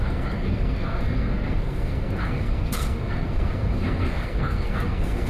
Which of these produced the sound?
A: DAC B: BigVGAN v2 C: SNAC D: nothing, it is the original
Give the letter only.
C